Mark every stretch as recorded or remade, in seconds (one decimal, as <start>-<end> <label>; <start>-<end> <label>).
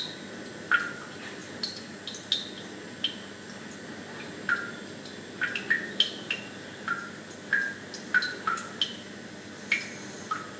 0.0-10.6 recorded